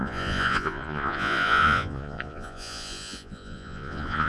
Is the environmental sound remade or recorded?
remade